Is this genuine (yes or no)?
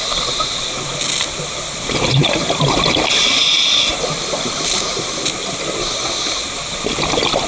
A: yes